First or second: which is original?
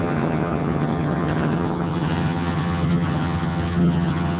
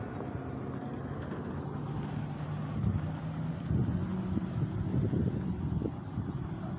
second